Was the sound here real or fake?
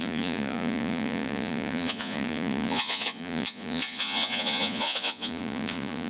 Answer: fake